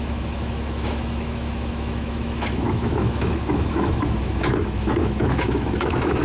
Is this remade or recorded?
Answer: remade